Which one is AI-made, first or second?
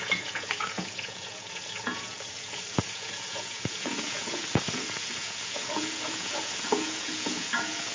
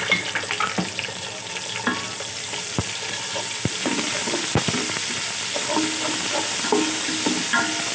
first